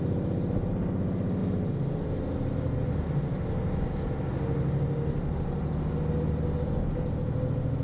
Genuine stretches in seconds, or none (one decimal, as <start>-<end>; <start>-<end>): 0.0-7.8